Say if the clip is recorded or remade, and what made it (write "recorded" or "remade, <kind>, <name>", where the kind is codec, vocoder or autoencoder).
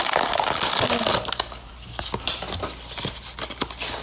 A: recorded